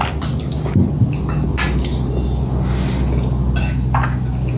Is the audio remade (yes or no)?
no